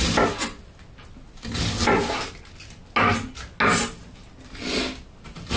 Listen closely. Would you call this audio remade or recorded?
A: recorded